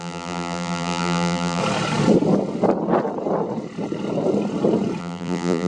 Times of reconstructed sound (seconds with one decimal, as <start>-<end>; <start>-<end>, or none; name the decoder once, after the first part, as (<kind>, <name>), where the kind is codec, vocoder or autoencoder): 0.0-1.6 (vocoder, BigVGAN v2); 5.0-5.7